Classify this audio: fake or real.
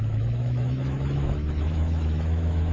fake